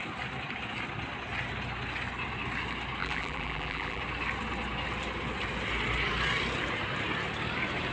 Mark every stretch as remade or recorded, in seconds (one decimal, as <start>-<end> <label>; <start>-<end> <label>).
0.0-3.0 recorded; 3.0-4.0 remade; 4.0-7.9 recorded